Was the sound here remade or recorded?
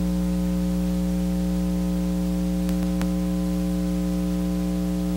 recorded